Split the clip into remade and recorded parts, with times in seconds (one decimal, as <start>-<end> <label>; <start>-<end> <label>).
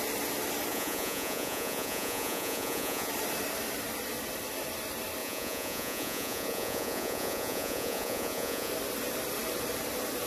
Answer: 0.0-0.7 recorded; 0.7-3.1 remade; 3.1-5.2 recorded; 5.2-8.7 remade; 8.7-10.3 recorded